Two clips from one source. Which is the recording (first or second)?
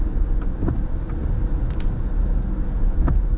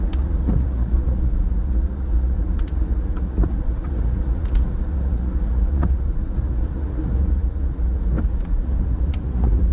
first